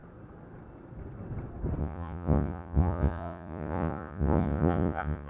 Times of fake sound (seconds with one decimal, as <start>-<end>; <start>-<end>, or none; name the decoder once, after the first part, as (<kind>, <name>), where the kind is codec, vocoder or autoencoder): 1.8-5.3 (vocoder, Vocos)